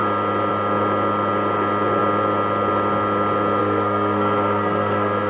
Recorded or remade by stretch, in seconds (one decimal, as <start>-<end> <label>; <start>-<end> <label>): 0.0-3.6 recorded; 3.6-5.3 remade